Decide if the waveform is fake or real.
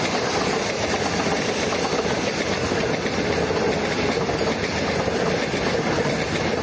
real